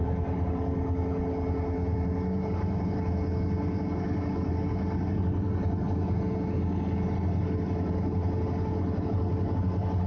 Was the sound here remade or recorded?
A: recorded